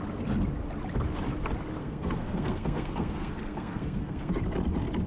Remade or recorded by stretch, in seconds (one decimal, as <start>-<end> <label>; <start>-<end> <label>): 0.0-1.8 recorded; 1.8-4.4 remade; 4.4-5.1 recorded